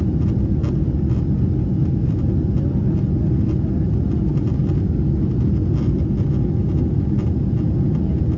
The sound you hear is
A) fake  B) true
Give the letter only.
B